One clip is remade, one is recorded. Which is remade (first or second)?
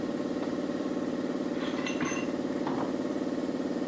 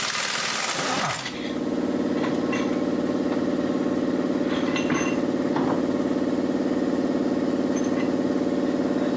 first